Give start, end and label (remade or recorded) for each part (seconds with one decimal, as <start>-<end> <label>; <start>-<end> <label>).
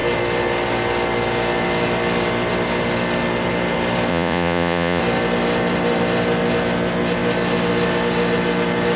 0.0-4.1 recorded; 4.1-5.0 remade; 5.0-9.0 recorded